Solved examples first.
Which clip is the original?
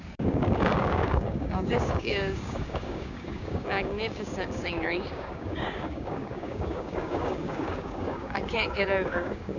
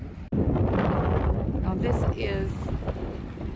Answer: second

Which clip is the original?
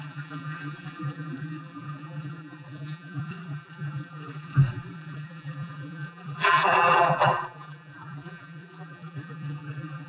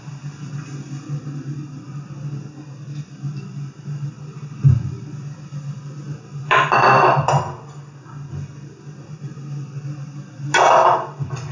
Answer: second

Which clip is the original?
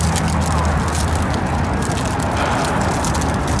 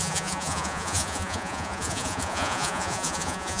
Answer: first